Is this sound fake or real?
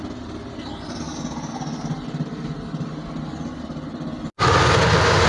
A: real